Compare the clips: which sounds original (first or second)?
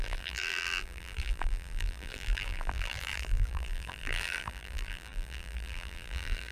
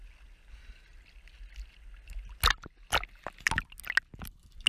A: second